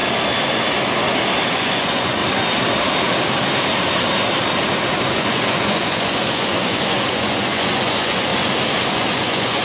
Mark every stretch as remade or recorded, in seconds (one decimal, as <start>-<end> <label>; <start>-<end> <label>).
0.0-1.5 recorded; 1.5-2.2 remade; 2.2-5.0 recorded; 5.0-8.3 remade; 8.3-8.9 recorded; 8.9-9.6 remade